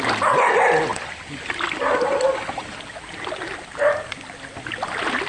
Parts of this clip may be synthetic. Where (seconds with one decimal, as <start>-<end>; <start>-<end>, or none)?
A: none